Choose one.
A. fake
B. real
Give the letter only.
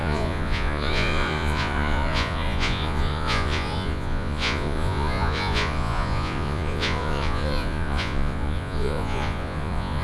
A